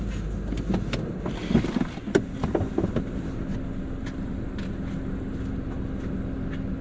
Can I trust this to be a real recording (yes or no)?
yes